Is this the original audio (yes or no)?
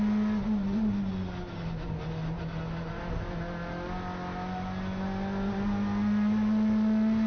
yes